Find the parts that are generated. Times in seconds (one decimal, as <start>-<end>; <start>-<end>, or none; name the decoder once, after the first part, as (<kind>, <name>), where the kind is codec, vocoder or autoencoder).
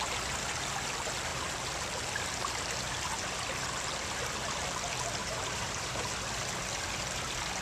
5.2-6.1 (vocoder, BigVGAN v2)